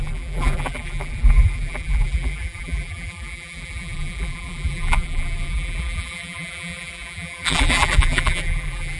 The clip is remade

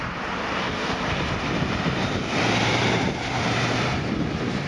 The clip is remade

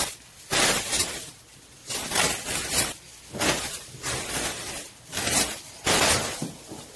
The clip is recorded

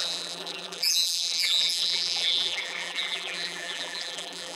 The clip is remade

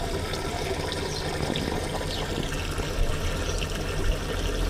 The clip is recorded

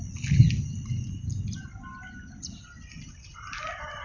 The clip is recorded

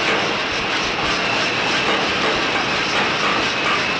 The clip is recorded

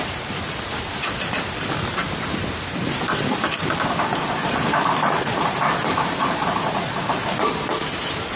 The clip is remade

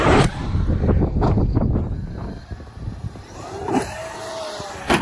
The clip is remade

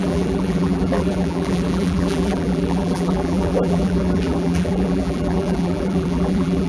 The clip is remade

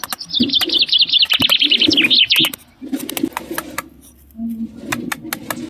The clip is recorded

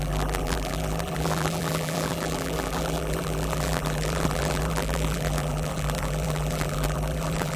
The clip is remade